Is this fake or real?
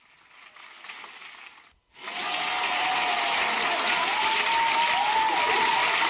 real